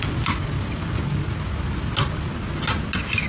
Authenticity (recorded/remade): recorded